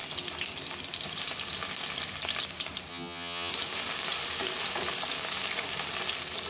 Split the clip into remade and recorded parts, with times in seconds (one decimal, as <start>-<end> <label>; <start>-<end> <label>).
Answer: 0.0-2.9 recorded; 2.9-3.5 remade; 3.5-6.5 recorded